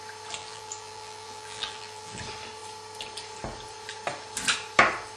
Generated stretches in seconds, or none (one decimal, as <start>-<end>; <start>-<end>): 0.4-2.2